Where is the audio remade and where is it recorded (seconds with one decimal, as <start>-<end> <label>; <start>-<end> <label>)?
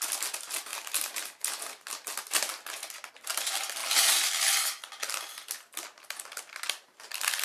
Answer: 0.0-7.4 recorded